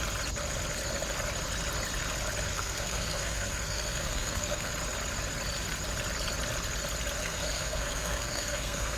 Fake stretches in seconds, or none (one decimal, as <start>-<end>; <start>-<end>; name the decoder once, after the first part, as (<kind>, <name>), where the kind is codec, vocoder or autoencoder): 2.5-4.7 (codec, SNAC); 7.2-9.0